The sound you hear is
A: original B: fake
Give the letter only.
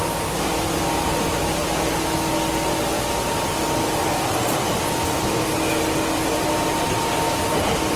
A